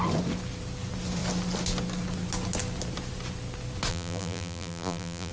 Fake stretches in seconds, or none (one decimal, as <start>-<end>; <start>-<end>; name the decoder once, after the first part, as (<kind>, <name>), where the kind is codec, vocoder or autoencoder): 3.9-5.3 (vocoder, BigVGAN v2)